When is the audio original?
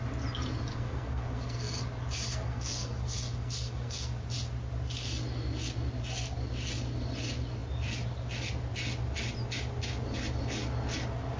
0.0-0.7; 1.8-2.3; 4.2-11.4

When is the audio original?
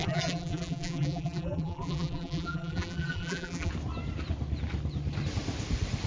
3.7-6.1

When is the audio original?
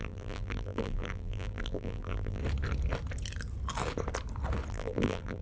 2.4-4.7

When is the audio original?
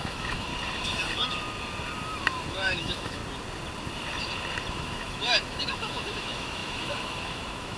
0.5-2.5; 3.2-4.7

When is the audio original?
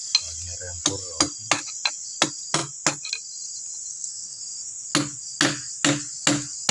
0.0-3.9; 4.4-6.7